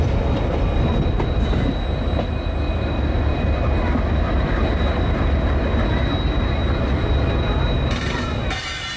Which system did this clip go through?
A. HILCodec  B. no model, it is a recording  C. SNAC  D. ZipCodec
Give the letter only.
B